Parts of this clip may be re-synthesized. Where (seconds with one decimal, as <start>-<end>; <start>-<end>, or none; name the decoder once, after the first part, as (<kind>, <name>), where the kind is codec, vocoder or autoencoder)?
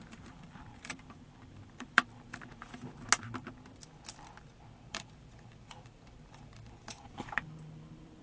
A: 0.0-2.5 (vocoder, BigVGAN v2); 4.9-8.2